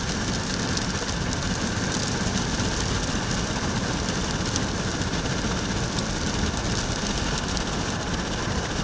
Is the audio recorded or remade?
recorded